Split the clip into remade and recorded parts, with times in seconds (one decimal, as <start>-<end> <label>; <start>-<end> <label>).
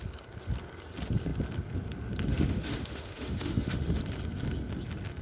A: 0.0-2.3 recorded; 2.3-4.0 remade; 4.0-5.2 recorded